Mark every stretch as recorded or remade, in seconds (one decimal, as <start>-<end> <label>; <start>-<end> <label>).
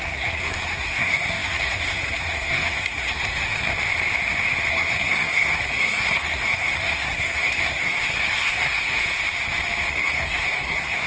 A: 0.0-3.7 remade; 3.7-4.7 recorded; 4.7-9.0 remade; 9.0-9.9 recorded; 9.9-11.1 remade